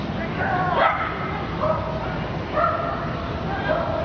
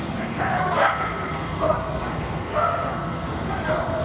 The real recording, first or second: first